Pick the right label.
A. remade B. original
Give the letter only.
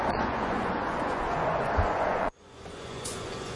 A